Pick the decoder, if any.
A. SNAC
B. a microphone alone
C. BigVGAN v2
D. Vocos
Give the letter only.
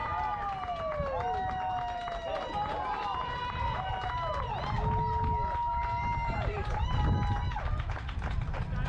B